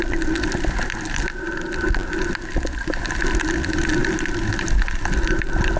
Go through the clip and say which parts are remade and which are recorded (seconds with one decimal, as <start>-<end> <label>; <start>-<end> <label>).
0.0-5.8 recorded